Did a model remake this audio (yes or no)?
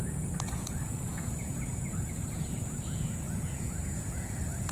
yes